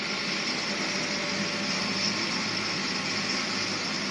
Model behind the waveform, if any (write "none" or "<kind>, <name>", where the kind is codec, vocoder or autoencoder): none